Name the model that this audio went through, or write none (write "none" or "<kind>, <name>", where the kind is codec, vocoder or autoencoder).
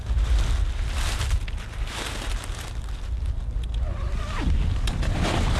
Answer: none